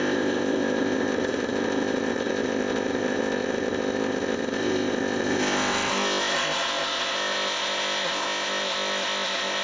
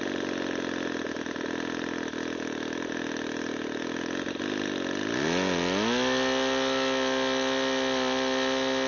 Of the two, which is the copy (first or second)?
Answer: first